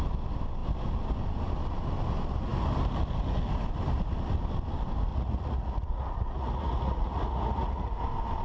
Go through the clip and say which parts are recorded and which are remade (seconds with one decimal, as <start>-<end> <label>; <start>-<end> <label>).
0.0-5.1 recorded; 5.1-8.0 remade; 8.0-8.4 recorded